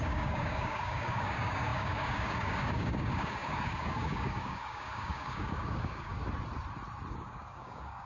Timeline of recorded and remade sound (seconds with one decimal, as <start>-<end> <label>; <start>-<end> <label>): 0.0-6.2 remade; 6.2-7.1 recorded; 7.1-8.1 remade